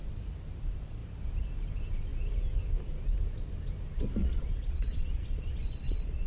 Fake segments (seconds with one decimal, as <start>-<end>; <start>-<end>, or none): 4.2-6.3